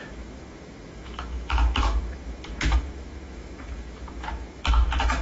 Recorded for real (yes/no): no